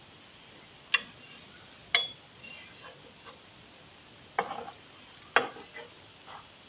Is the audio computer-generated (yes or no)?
no